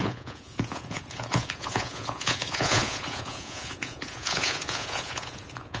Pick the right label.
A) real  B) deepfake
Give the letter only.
B